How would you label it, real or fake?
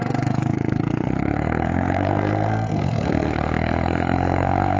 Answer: fake